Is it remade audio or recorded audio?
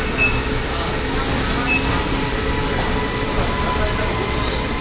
recorded